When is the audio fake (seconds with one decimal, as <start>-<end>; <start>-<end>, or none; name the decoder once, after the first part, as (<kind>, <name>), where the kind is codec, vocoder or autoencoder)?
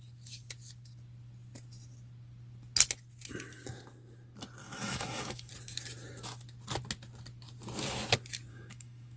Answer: 4.6-5.5 (autoencoder, DAC-VAE); 8.5-9.2